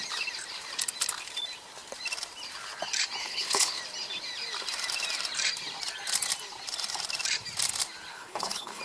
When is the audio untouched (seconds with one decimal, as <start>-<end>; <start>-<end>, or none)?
0.0-3.2; 3.8-8.1